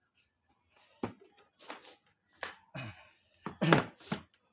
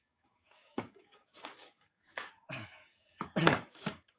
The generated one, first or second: second